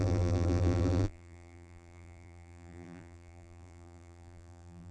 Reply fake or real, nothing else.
fake